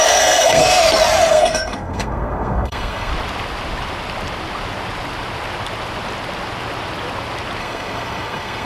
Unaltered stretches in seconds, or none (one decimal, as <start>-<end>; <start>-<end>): 0.6-1.3; 3.1-7.6